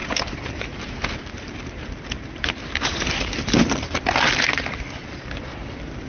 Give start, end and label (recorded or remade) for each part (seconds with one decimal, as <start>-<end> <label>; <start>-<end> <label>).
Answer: 0.0-3.5 remade; 3.5-6.1 recorded